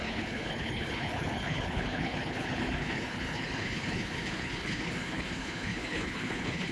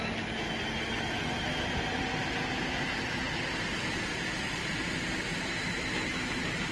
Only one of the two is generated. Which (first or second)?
first